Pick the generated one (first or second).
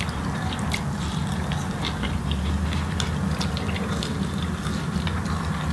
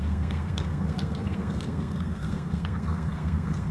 second